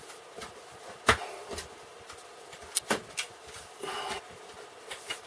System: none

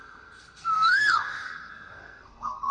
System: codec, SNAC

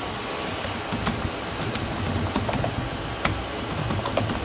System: none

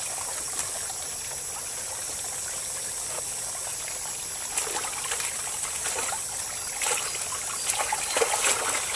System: none